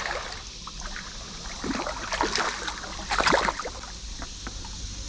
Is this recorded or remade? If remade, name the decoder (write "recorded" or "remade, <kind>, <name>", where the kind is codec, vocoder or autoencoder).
recorded